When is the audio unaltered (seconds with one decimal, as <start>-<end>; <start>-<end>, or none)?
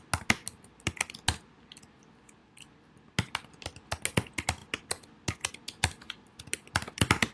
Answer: 0.0-7.3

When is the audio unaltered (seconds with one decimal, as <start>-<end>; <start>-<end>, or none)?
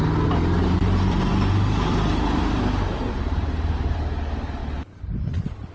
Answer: 0.0-0.6; 4.0-4.6; 5.1-5.7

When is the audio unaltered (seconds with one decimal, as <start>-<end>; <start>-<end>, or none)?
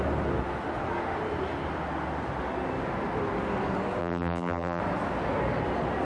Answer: 0.0-4.0; 4.8-6.0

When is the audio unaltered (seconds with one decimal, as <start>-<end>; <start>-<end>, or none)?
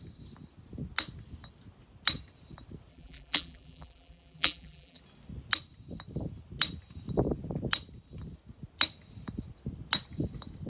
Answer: 0.0-2.9; 5.0-10.7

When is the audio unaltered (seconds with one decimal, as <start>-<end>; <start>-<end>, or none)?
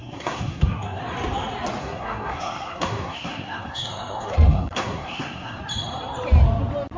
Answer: 1.0-1.8; 5.6-7.0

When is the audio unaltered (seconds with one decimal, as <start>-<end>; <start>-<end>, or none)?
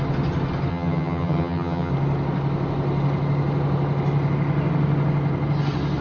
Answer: 0.0-0.7; 1.9-6.0